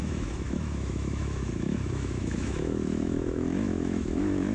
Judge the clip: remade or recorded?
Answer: remade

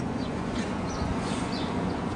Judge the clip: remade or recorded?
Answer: remade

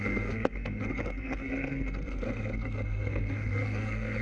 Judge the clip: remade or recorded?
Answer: remade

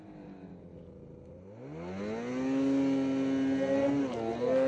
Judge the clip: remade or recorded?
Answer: recorded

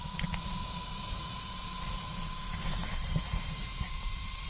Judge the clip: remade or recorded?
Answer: recorded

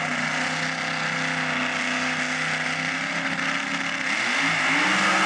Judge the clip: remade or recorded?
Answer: recorded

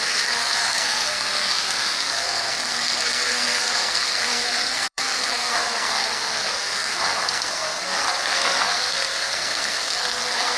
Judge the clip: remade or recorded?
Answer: remade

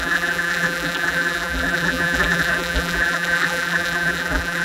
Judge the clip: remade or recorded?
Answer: remade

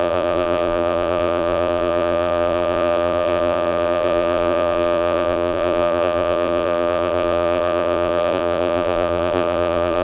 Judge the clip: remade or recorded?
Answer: remade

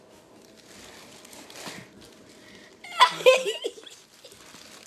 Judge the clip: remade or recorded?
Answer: recorded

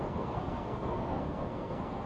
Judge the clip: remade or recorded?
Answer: remade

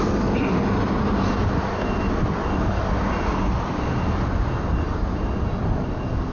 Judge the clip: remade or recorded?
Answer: recorded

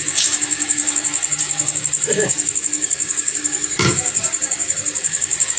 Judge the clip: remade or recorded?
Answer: remade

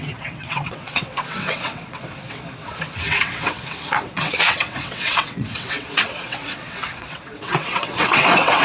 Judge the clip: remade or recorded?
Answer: remade